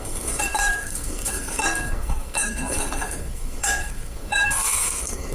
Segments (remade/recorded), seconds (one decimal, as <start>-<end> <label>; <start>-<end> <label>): 0.0-5.3 remade